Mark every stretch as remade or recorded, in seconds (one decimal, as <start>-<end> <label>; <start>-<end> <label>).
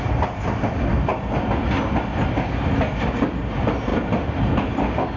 0.0-5.2 recorded